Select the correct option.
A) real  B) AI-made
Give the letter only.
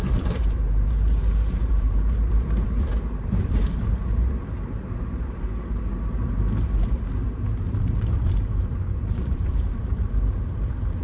B